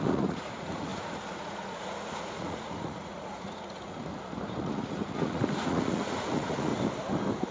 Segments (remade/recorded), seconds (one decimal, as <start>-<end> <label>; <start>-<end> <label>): 0.0-4.1 remade; 4.1-4.6 recorded; 4.6-6.7 remade; 6.7-7.5 recorded